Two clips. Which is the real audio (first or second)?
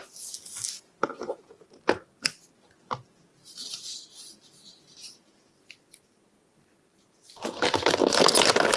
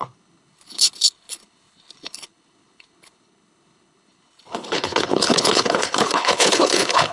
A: first